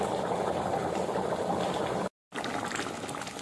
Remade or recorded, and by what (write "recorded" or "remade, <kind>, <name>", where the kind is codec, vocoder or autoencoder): recorded